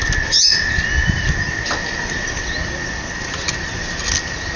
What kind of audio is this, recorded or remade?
recorded